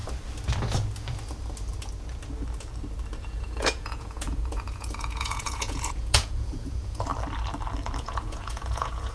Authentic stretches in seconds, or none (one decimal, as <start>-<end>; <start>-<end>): 0.0-3.2; 7.1-8.0